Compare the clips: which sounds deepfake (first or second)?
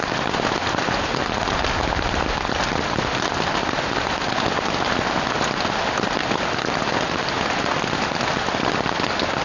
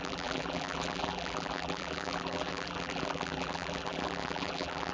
second